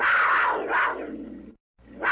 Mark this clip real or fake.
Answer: real